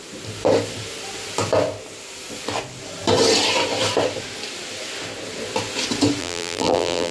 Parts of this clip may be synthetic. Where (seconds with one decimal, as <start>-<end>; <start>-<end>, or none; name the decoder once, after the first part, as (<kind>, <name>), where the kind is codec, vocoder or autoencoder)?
6.2-7.1 (vocoder, BigVGAN v2)